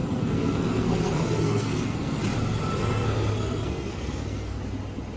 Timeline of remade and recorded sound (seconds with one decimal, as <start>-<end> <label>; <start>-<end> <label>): 0.0-2.2 remade; 2.2-2.8 recorded; 2.8-4.6 remade; 4.6-5.2 recorded